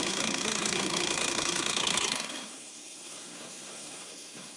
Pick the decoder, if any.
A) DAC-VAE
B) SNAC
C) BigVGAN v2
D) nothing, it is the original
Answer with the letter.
B